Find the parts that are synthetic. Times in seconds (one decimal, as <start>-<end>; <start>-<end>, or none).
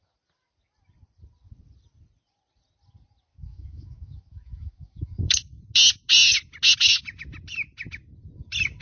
3.3-5.6